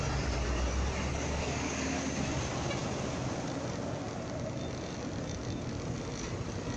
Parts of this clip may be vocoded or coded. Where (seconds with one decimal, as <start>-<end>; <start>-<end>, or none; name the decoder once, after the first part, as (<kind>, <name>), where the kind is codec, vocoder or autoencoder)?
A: 1.1-2.1 (codec, DAC)